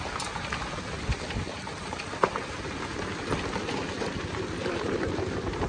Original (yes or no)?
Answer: yes